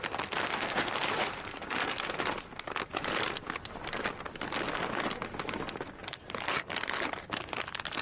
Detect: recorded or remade recorded